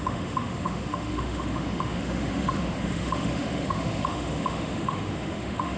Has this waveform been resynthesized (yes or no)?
yes